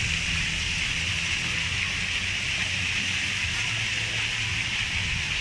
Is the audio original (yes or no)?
yes